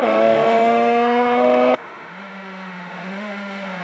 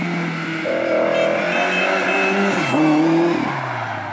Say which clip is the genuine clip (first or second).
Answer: second